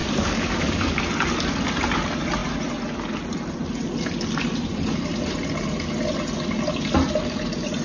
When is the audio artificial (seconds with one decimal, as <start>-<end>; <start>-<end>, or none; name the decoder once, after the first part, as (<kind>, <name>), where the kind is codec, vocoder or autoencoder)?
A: 0.0-1.0 (codec, DAC)